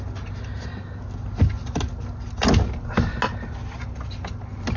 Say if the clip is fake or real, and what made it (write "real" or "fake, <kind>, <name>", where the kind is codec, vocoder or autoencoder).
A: real